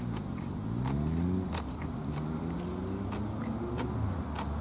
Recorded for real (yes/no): yes